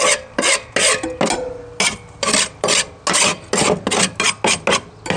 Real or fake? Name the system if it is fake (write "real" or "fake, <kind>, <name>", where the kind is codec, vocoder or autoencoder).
real